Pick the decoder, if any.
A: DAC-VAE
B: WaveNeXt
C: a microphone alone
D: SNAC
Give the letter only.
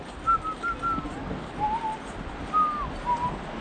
C